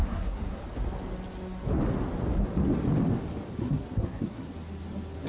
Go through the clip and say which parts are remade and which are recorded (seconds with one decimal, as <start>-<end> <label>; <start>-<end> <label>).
0.0-0.6 remade; 0.6-3.6 recorded; 3.6-4.5 remade; 4.5-5.3 recorded